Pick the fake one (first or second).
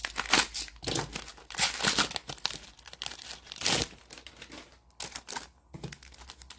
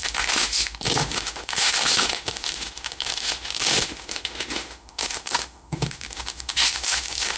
second